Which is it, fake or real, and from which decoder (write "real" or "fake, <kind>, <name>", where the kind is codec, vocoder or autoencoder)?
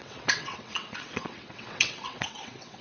fake, vocoder, WaveNeXt